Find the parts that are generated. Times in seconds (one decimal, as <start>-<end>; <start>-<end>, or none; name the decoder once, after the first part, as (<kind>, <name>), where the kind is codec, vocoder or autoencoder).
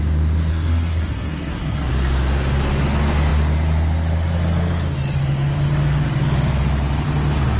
0.5-1.9 (codec, SNAC)